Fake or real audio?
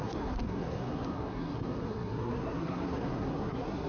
fake